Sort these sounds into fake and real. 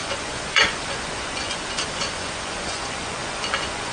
fake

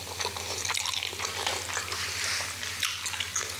real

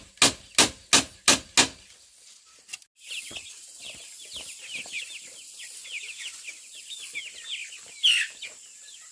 real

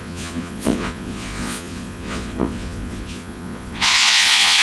fake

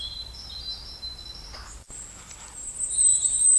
real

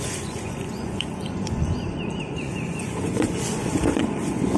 fake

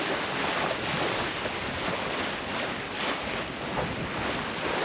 real